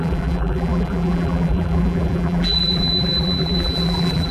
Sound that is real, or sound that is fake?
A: fake